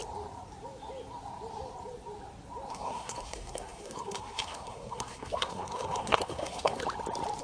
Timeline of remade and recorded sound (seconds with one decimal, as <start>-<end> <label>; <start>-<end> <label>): 0.0-2.7 recorded; 2.7-6.8 remade; 6.8-7.4 recorded